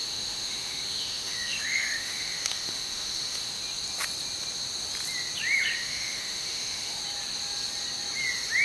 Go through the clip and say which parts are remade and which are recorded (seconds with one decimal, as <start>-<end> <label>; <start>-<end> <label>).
0.0-3.6 remade; 3.6-5.8 recorded; 5.8-7.0 remade; 7.0-8.6 recorded